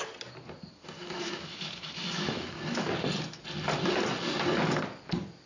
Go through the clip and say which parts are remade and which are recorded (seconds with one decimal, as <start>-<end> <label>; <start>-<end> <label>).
0.0-1.0 recorded; 1.0-2.9 remade; 2.9-5.5 recorded